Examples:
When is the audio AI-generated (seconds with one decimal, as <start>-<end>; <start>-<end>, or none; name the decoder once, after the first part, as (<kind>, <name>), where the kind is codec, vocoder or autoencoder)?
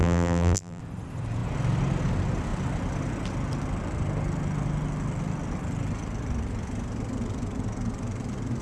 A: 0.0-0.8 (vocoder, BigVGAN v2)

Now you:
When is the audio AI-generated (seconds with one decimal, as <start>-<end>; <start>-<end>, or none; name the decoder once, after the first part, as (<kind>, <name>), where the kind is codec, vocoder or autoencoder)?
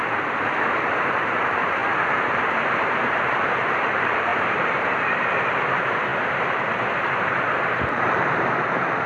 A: 0.0-6.1 (vocoder, BigVGAN v2); 7.2-9.1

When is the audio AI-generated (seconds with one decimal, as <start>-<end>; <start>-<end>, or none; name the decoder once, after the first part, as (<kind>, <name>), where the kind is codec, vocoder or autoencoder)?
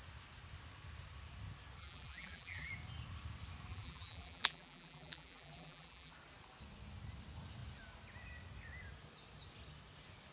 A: 1.8-2.7 (vocoder, BigVGAN v2); 3.7-6.1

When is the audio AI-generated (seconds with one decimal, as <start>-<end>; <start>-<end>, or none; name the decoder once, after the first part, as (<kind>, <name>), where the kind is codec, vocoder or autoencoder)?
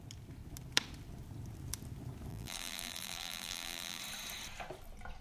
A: 2.3-4.0 (vocoder, BigVGAN v2)